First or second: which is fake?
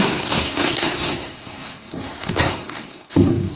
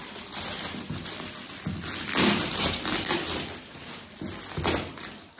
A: first